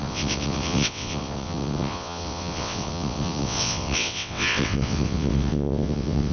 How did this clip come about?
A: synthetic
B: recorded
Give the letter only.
A